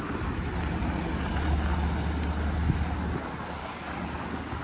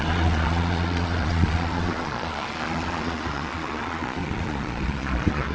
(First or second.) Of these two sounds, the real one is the first